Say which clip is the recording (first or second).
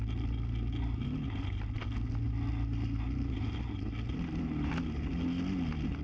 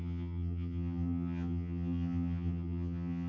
first